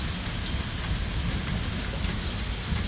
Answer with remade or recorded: recorded